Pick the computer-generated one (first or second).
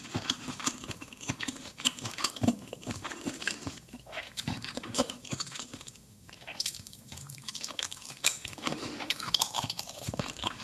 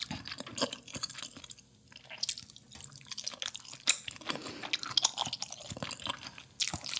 first